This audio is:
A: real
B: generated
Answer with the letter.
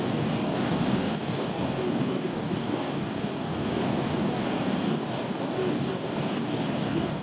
B